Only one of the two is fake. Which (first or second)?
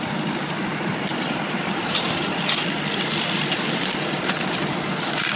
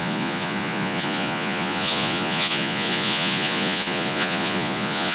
second